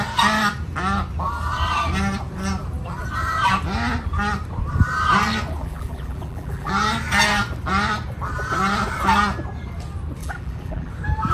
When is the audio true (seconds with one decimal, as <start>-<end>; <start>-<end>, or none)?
0.0-5.6; 6.7-10.2; 10.9-11.3